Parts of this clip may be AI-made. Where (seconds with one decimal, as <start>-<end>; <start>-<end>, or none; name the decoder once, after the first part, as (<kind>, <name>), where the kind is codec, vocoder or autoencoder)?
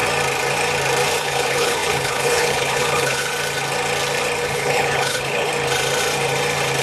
1.2-3.3 (codec, HILCodec); 4.4-5.5